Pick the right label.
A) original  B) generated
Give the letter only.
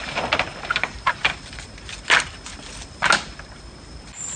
A